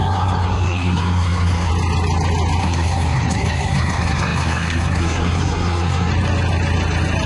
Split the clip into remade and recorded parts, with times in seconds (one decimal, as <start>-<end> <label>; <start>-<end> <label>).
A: 0.0-1.7 remade; 1.7-2.6 recorded; 2.6-6.1 remade; 6.1-7.3 recorded